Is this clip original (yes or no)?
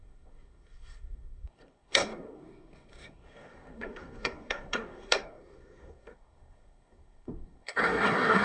no